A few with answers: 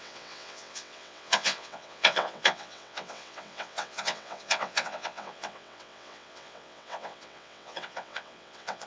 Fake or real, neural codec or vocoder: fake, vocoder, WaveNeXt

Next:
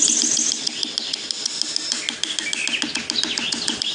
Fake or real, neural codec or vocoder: real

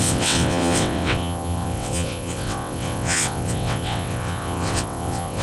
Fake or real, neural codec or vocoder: fake, vocoder, WaveNeXt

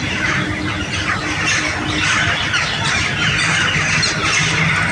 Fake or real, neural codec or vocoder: real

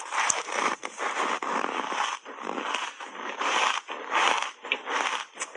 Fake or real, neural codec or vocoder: real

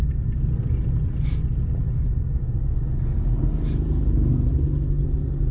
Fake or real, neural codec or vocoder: real